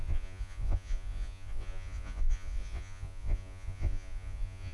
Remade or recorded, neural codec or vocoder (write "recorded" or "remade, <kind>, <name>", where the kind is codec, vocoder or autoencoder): remade, vocoder, Vocos